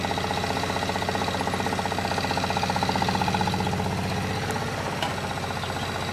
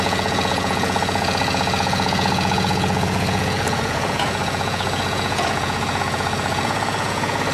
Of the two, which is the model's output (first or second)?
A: second